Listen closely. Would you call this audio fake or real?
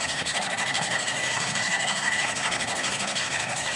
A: fake